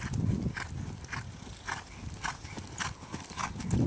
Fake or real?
real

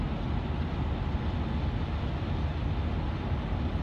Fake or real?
real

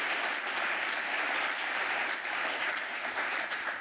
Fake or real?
fake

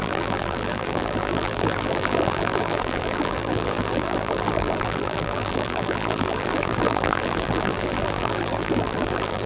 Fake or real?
fake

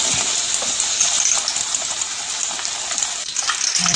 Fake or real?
fake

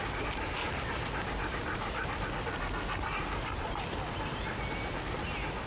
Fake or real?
real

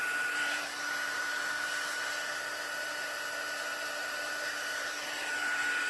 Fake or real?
fake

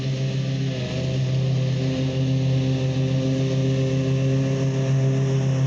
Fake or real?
real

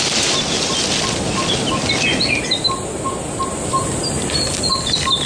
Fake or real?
real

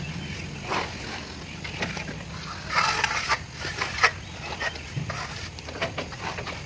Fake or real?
real